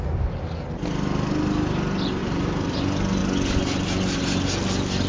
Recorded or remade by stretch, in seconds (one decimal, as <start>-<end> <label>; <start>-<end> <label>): 0.0-2.2 recorded; 2.2-2.8 remade; 2.8-5.1 recorded